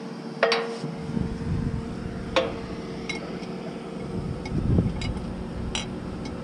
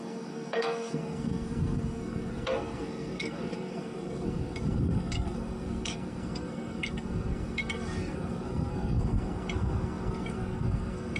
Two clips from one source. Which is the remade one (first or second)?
second